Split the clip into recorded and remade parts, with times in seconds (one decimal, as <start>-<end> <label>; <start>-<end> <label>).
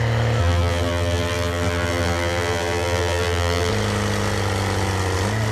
0.0-0.4 recorded; 0.4-3.7 remade; 3.7-5.5 recorded